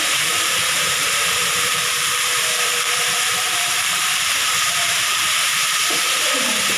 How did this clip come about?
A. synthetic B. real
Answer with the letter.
A